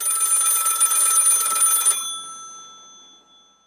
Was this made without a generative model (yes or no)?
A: yes